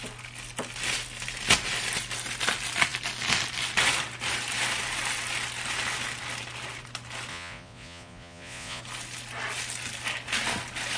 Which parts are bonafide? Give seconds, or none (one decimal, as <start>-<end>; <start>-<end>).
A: 0.0-7.3; 8.8-11.0